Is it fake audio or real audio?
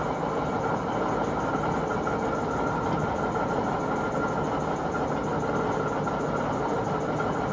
real